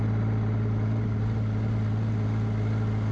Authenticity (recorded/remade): recorded